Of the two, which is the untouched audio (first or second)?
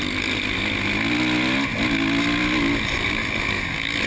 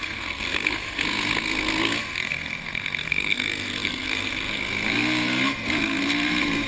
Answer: first